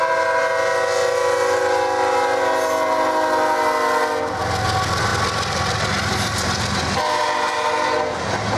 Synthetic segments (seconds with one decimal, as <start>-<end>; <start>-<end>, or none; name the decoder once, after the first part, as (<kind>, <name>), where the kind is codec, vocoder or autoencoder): none